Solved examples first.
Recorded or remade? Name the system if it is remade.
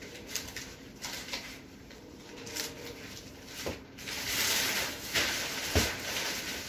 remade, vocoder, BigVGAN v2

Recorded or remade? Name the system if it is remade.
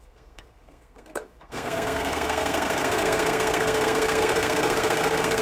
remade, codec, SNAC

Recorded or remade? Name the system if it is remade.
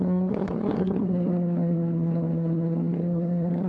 remade, codec, SNAC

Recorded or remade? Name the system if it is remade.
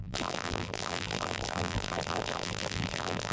remade, vocoder, BigVGAN v2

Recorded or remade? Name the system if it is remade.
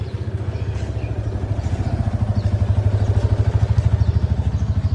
recorded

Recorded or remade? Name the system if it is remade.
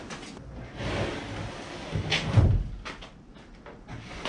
recorded